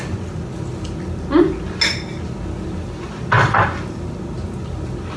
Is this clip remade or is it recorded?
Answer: recorded